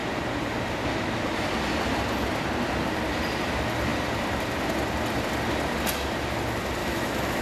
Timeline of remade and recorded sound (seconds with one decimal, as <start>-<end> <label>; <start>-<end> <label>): 0.0-6.8 recorded; 6.8-7.4 remade